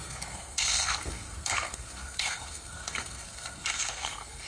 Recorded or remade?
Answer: remade